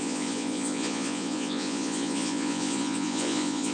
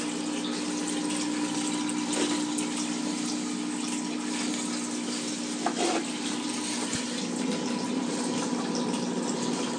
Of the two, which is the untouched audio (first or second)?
second